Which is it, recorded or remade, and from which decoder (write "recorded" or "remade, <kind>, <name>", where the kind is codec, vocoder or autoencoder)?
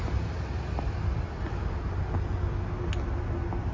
recorded